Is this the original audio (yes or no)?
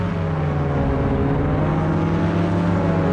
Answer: yes